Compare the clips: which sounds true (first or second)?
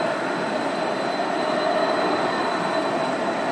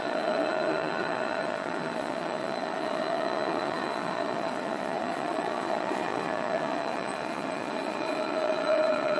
first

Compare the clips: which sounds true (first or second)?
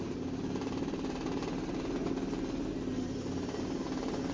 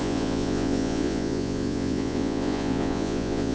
first